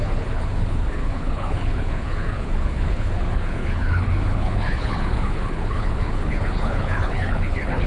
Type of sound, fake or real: fake